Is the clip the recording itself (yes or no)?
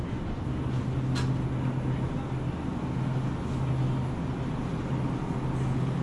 yes